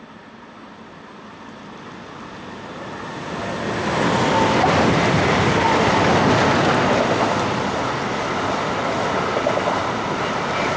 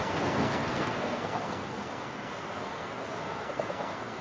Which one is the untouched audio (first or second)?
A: first